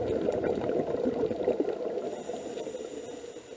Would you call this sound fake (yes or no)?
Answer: no